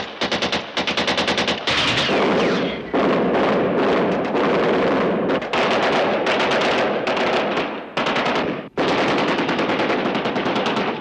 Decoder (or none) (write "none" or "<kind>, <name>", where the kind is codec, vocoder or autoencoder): none